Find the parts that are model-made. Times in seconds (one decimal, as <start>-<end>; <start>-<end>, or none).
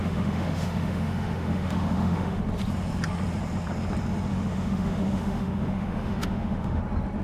0.0-2.4; 4.3-6.8